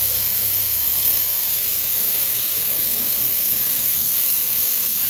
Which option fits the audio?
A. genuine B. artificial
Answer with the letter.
B